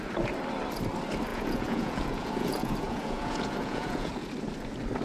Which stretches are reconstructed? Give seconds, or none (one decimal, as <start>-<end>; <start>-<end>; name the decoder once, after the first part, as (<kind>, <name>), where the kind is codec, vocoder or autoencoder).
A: 1.3-4.3 (vocoder, Vocos)